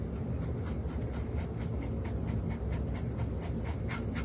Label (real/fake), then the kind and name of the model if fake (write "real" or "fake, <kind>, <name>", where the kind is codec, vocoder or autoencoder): real